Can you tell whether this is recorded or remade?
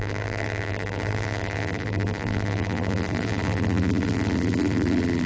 remade